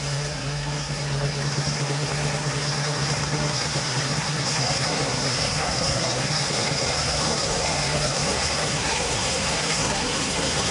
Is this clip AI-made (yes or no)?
yes